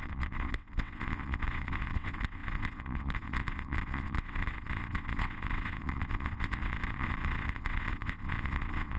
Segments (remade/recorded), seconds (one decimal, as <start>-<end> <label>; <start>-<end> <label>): 0.0-9.0 remade